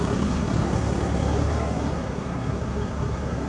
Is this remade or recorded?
remade